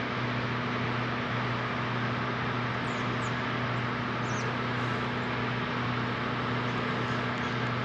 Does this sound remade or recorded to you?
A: recorded